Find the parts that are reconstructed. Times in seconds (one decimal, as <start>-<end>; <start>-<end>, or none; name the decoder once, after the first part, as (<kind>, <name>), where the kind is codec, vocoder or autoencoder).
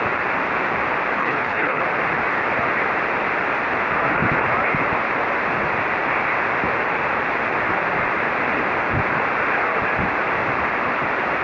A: 1.2-1.8 (codec, HILCodec)